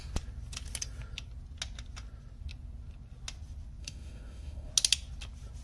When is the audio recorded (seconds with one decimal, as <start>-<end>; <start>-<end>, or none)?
0.0-3.8; 4.7-5.6